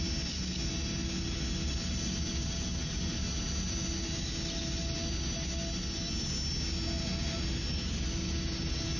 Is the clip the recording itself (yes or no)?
yes